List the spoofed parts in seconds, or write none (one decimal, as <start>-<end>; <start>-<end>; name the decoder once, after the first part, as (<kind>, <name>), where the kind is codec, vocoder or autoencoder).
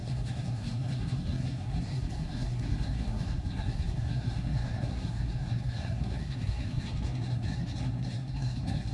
0.0-8.9 (codec, SNAC)